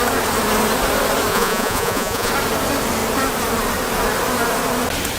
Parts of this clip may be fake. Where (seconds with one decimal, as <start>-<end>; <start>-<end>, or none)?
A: 1.3-2.3